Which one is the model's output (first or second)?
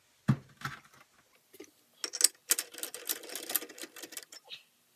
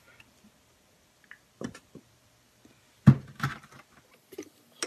second